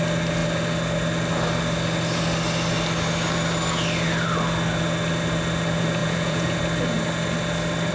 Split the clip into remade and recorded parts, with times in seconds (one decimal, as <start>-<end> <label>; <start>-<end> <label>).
0.0-6.0 recorded; 6.0-6.6 remade; 6.6-7.9 recorded